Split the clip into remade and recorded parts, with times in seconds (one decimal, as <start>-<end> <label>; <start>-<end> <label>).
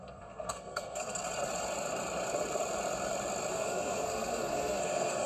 0.0-1.2 remade; 1.2-3.5 recorded; 3.5-5.3 remade